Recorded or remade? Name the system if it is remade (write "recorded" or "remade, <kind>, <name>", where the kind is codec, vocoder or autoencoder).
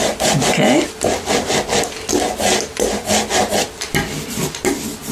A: recorded